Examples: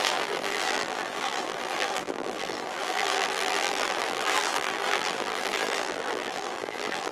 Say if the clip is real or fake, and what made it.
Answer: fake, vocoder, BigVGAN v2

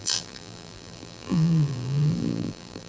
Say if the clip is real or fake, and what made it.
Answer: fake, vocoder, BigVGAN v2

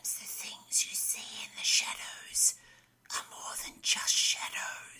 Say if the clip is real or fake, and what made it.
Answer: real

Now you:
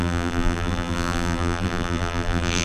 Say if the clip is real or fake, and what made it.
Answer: fake, vocoder, BigVGAN v2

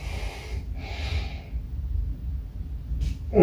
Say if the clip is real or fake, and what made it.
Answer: real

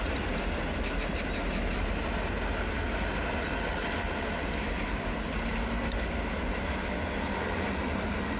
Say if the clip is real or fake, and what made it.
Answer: real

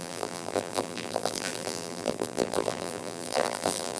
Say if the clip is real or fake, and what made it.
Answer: fake, vocoder, BigVGAN v2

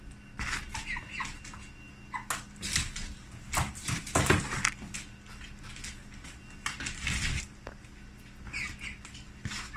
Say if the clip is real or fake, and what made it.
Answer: real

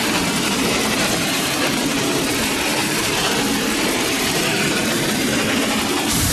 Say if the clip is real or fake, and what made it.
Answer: fake, vocoder, BigVGAN v2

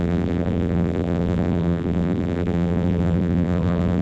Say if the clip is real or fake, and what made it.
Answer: fake, vocoder, BigVGAN v2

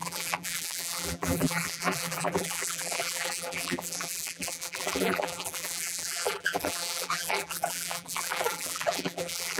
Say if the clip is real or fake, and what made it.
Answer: fake, vocoder, BigVGAN v2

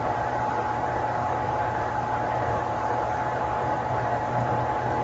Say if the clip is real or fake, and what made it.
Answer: fake, vocoder, BigVGAN v2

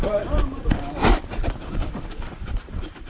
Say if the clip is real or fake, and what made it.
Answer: fake, vocoder, BigVGAN v2